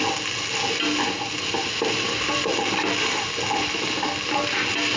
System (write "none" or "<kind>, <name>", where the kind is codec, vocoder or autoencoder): none